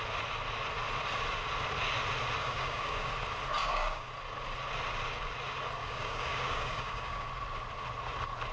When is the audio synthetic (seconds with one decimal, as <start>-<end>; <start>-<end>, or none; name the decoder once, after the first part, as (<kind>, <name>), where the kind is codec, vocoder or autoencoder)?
2.4-3.1 (codec, DAC); 3.6-4.1; 5.8-7.3